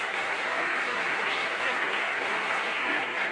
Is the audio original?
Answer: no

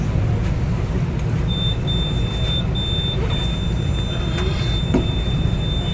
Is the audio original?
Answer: yes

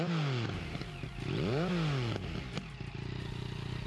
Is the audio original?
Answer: yes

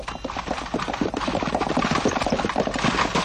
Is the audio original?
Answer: yes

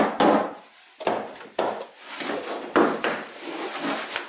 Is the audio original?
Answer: yes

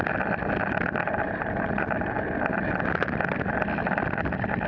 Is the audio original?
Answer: yes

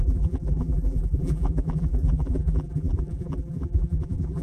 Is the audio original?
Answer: no